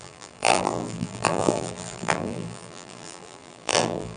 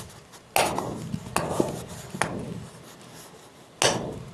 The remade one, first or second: first